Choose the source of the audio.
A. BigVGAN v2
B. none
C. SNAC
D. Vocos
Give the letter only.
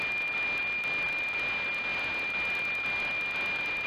B